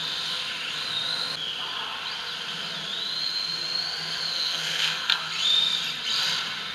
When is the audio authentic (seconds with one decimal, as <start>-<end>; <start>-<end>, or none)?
0.0-4.3; 5.2-6.7